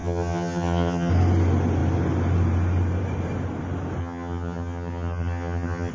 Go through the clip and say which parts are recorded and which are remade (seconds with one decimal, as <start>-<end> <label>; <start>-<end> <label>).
0.0-1.1 remade; 1.1-4.0 recorded; 4.0-5.9 remade